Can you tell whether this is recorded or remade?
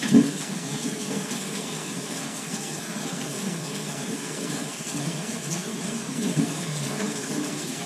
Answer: remade